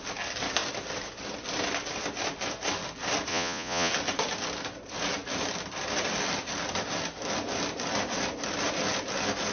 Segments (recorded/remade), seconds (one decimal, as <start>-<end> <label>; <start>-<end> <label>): 0.0-3.3 recorded; 3.3-3.9 remade; 3.9-9.5 recorded